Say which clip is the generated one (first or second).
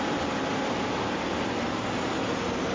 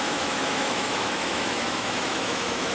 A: second